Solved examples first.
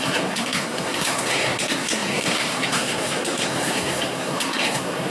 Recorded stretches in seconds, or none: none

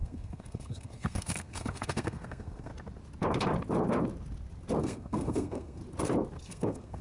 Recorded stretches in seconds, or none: 2.7-4.8; 5.8-6.4

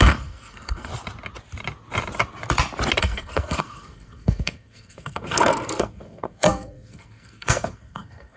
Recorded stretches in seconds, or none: 0.9-3.0

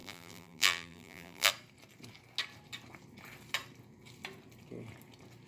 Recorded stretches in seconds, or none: 1.5-5.5

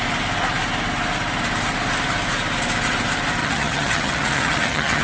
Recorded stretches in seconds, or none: 0.0-3.4

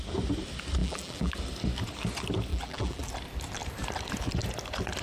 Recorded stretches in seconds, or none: 0.0-0.8; 1.3-2.5; 3.1-5.0

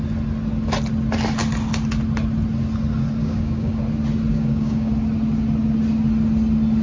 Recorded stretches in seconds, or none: 0.0-3.2; 3.8-4.3; 4.9-6.8

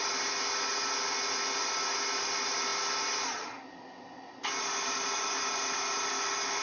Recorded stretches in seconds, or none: 0.0-6.6